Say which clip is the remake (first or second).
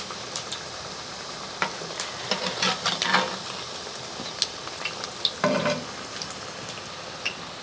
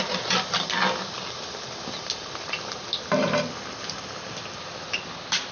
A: first